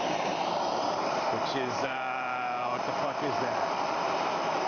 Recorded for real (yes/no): no